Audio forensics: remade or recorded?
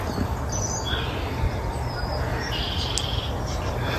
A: recorded